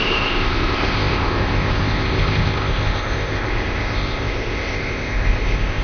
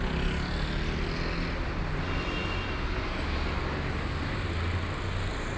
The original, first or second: second